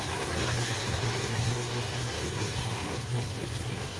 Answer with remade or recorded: remade